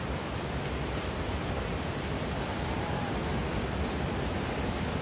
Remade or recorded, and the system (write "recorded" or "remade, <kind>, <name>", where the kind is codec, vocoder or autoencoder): recorded